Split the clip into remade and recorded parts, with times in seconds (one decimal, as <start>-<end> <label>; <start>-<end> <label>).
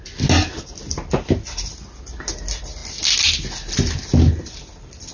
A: 0.0-5.1 recorded